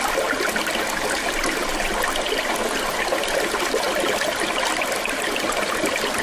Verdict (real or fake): real